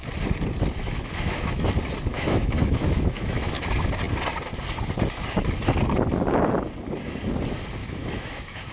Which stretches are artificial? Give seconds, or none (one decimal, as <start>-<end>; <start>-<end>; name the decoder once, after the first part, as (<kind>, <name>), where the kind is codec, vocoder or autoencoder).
0.8-1.6 (autoencoder, DAC-VAE); 2.1-3.6; 7.8-8.7